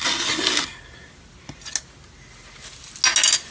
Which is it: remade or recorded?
recorded